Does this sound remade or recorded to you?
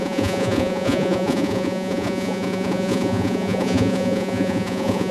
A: remade